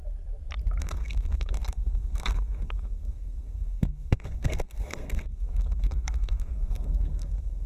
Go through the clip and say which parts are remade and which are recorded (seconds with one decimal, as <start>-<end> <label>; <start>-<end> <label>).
0.0-0.8 recorded; 0.8-7.7 remade